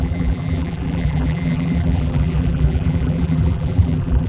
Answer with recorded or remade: remade